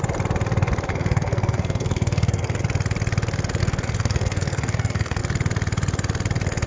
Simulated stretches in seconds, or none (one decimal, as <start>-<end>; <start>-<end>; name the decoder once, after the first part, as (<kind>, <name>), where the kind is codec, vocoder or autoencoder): 0.9-2.6 (codec, SNAC); 3.6-5.2